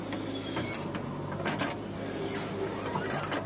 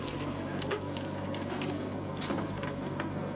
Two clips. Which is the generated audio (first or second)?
second